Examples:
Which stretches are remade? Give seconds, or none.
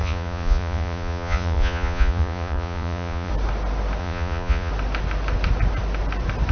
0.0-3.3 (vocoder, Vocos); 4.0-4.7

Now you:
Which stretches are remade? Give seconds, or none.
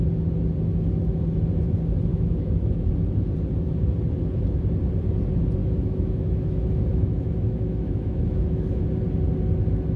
2.1-2.9 (autoencoder, DAC-VAE); 5.6-8.8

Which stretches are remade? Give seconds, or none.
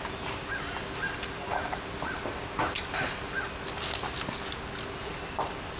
none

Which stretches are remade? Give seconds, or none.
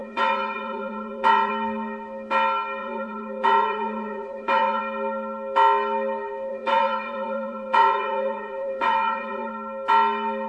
0.0-1.5 (vocoder, Vocos); 2.8-4.8; 6.5-9.5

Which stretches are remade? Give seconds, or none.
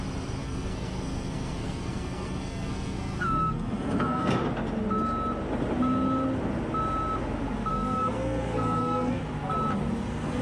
0.4-4.3 (codec, SNAC); 7.7-9.2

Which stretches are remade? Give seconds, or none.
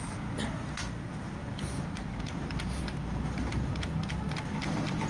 1.4-3.9 (vocoder, BigVGAN v2)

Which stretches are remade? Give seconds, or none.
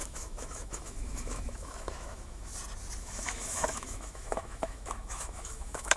0.0-2.5 (autoencoder, DAC-VAE); 3.0-6.0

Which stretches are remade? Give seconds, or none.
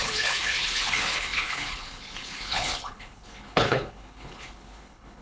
0.0-5.2 (codec, HILCodec)